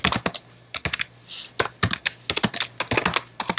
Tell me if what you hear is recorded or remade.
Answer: recorded